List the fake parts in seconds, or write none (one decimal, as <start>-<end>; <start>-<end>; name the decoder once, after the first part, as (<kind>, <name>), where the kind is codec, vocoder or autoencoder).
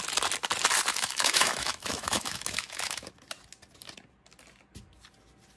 0.9-3.1 (autoencoder, DAC-VAE)